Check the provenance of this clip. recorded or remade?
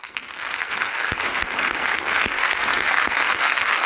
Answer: remade